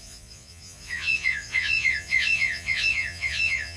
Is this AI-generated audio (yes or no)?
yes